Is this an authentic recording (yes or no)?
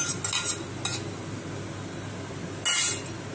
yes